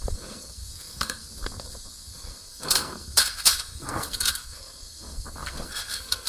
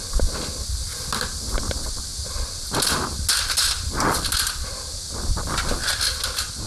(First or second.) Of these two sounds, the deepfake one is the first